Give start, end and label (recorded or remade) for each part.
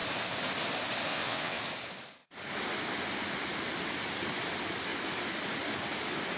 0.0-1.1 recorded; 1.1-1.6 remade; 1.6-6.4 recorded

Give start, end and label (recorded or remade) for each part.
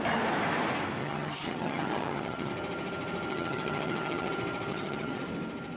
0.0-1.0 recorded; 1.0-2.5 remade; 2.5-3.3 recorded; 3.3-4.3 remade; 4.3-4.7 recorded; 4.7-5.2 remade; 5.2-5.8 recorded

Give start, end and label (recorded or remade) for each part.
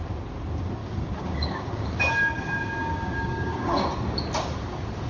0.0-0.8 recorded; 0.8-3.9 remade; 3.9-5.1 recorded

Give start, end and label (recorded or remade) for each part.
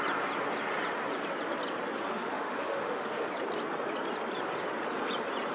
0.0-2.0 recorded; 2.0-3.3 remade; 3.3-5.5 recorded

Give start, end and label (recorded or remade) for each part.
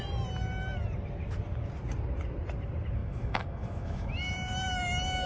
0.0-3.0 recorded; 3.0-4.3 remade; 4.3-5.3 recorded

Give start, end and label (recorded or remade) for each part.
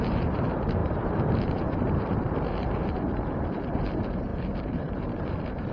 0.0-5.7 remade